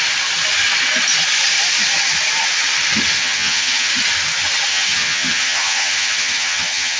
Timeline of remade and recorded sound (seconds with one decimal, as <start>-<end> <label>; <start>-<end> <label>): 0.0-3.1 recorded; 3.1-3.9 remade; 3.9-4.7 recorded; 4.7-7.0 remade